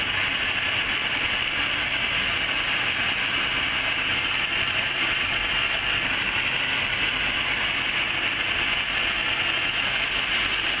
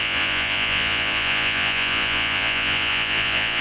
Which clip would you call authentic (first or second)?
first